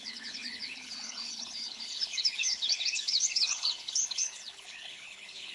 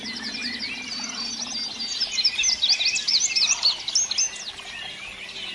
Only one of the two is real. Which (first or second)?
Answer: second